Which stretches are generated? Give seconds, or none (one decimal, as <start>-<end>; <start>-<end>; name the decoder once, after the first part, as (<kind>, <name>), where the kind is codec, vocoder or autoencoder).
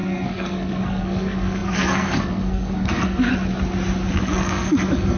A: 0.0-3.3 (codec, SNAC); 4.2-5.2